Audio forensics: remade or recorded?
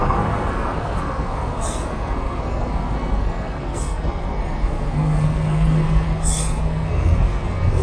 remade